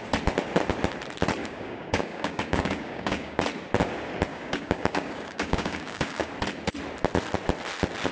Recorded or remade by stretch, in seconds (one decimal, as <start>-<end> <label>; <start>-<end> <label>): 0.0-1.4 recorded; 1.4-3.4 remade; 3.4-4.3 recorded; 4.3-6.3 remade; 6.3-8.1 recorded